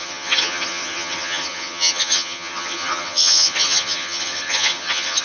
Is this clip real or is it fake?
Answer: fake